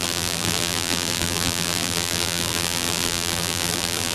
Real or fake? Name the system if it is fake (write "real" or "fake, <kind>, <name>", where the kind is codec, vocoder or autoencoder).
fake, vocoder, BigVGAN v2